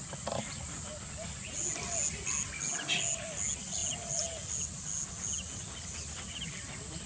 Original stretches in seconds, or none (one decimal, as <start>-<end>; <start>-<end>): 0.0-7.1